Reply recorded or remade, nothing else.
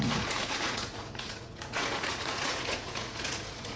remade